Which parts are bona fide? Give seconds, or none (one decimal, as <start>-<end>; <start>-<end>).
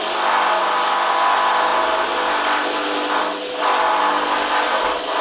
0.0-5.2